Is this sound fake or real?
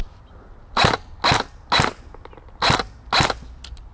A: real